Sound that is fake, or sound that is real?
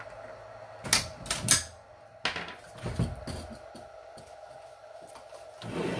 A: real